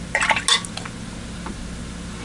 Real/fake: real